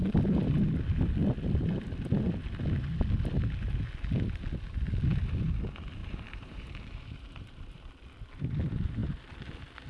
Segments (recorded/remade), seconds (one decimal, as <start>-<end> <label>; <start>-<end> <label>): 0.0-6.0 recorded; 6.0-7.9 remade; 7.9-9.9 recorded